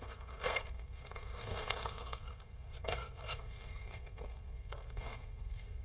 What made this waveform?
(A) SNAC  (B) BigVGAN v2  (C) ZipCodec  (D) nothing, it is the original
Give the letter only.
A